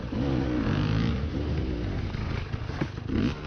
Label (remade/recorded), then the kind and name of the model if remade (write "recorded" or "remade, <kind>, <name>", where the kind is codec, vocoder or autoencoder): recorded